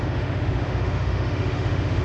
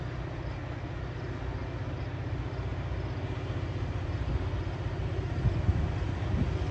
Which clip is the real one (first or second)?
second